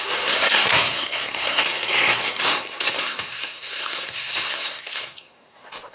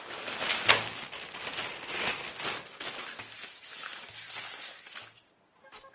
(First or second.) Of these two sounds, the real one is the second